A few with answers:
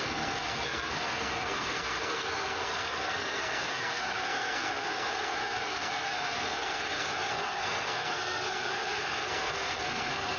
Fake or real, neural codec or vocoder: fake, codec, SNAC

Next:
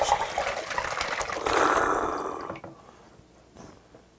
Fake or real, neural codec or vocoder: real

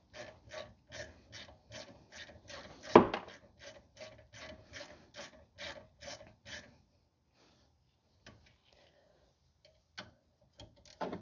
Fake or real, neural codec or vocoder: real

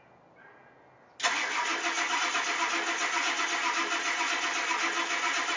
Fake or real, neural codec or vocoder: real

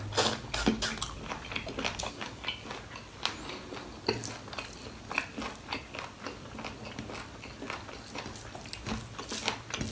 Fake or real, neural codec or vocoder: real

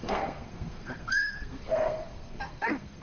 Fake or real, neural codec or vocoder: fake, codec, SNAC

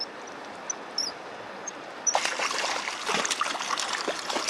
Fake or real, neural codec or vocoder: real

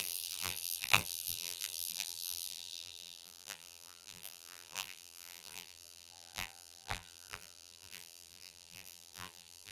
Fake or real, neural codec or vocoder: fake, vocoder, BigVGAN v2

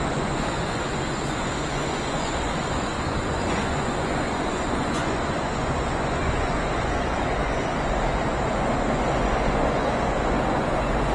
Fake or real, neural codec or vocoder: fake, vocoder, Vocos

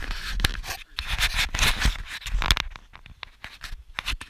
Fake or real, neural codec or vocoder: real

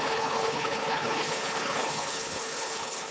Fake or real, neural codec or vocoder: fake, codec, HILCodec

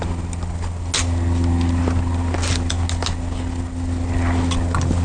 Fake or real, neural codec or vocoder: real